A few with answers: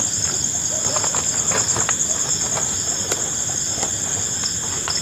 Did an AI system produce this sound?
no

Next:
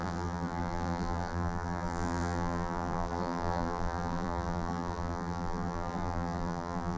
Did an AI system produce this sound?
yes